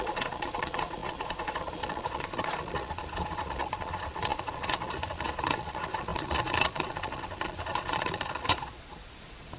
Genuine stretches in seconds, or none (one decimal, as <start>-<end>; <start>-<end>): none